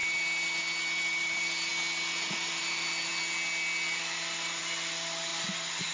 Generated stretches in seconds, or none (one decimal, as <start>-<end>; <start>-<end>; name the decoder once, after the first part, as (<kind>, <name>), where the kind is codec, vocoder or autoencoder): 1.2-1.7 (vocoder, BigVGAN v2); 2.6-3.1; 4.6-5.3